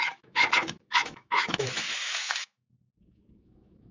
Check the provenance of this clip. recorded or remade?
remade